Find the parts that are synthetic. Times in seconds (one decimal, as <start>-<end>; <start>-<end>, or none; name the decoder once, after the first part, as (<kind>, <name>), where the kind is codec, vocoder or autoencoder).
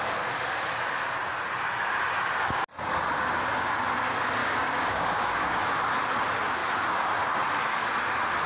4.4-5.7 (codec, DAC)